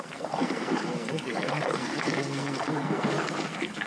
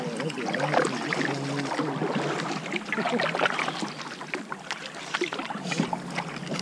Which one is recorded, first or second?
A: second